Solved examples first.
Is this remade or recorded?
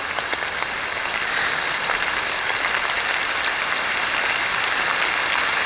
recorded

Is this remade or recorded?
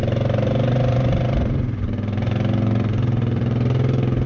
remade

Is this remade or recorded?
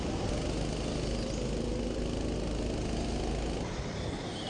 recorded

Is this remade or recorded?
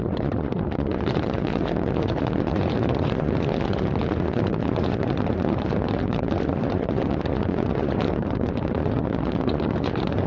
remade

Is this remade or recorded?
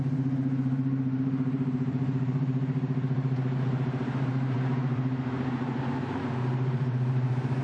remade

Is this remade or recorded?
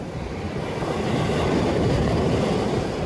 remade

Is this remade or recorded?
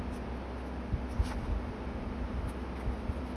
recorded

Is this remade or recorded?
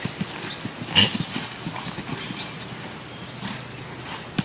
recorded